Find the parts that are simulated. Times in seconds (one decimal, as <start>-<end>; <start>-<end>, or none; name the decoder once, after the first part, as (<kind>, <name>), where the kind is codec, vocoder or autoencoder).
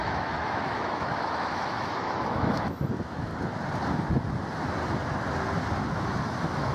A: 0.0-3.3 (autoencoder, DAC-VAE); 5.9-6.7